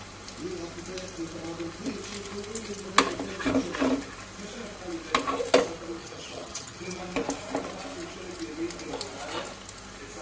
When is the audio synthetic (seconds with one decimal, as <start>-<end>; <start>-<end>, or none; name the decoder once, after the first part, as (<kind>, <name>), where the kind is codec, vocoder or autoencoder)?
6.0-7.0 (vocoder, HiFi-GAN)